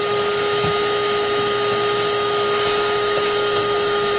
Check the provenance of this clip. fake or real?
fake